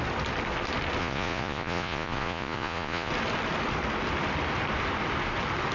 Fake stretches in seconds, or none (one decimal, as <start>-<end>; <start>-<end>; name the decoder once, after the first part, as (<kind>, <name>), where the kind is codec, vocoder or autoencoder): 1.0-3.1 (vocoder, Vocos)